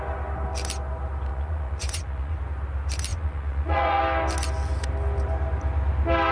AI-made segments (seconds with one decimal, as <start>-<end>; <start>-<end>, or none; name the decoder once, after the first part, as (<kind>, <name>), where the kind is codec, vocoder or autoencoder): 1.3-2.4 (vocoder, Vocos); 3.1-4.0